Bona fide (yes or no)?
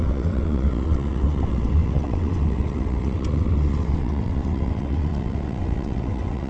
no